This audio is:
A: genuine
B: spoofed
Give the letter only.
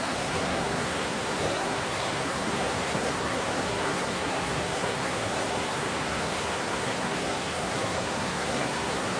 B